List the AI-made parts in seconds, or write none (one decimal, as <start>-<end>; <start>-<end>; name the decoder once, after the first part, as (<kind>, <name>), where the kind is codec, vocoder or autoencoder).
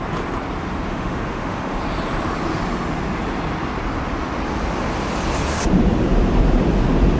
0.9-1.8 (autoencoder, DAC-VAE)